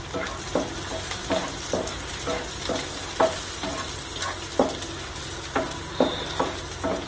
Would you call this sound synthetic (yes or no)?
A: no